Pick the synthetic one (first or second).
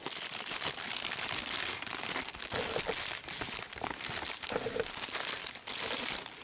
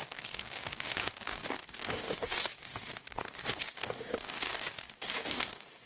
second